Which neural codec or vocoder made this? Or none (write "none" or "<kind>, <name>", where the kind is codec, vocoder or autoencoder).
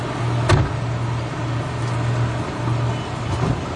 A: none